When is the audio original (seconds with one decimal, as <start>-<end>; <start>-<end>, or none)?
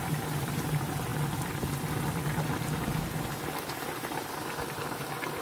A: 1.1-2.0